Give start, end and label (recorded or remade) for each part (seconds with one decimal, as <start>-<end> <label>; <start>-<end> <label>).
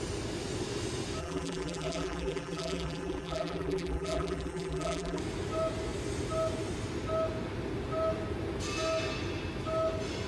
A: 0.0-1.2 recorded; 1.2-5.2 remade; 5.2-10.3 recorded